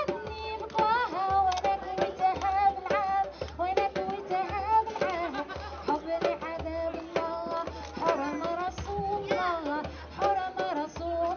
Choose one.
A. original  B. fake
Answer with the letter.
A